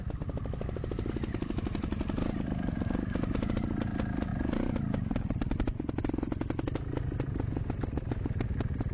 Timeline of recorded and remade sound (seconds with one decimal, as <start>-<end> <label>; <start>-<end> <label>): 0.0-8.9 recorded